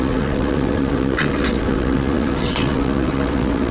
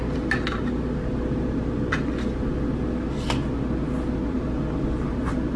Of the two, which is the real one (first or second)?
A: second